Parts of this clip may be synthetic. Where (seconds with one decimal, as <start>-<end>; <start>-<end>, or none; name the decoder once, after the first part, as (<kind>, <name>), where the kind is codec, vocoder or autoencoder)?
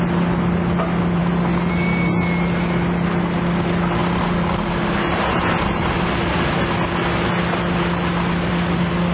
none